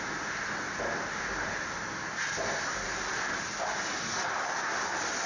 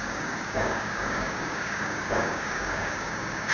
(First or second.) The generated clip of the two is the second